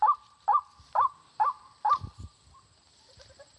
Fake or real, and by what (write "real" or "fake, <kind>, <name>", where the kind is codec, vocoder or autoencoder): fake, vocoder, BigVGAN v2